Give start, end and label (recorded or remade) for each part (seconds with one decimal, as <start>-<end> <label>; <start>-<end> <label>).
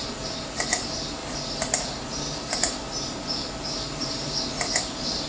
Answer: 0.0-5.3 recorded